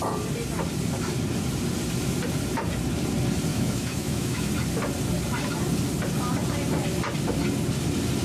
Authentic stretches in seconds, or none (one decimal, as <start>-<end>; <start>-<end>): 0.0-3.5; 4.5-8.2